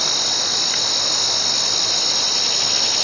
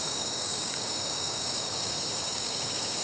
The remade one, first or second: second